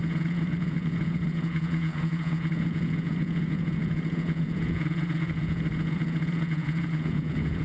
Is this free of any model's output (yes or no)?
no